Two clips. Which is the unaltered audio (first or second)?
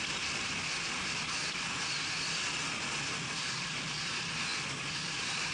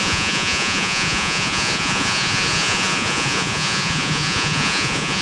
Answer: first